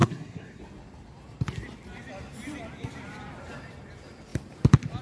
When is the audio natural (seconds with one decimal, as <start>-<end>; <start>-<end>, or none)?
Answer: 0.6-5.0